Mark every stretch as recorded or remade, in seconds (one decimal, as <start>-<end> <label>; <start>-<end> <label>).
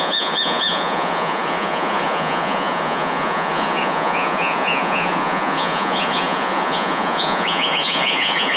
0.0-8.6 remade